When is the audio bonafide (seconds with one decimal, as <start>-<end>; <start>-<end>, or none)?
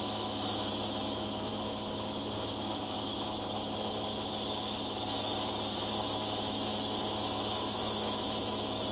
5.3-6.0